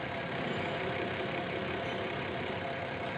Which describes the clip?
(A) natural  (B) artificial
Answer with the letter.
B